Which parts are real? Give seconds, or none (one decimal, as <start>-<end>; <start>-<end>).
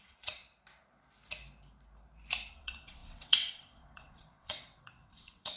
0.4-2.5